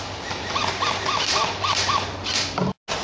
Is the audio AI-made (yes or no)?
no